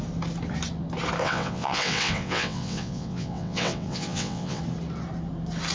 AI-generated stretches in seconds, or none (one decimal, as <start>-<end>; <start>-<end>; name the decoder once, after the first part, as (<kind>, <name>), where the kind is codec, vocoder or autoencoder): 1.2-4.6 (vocoder, WaveNeXt)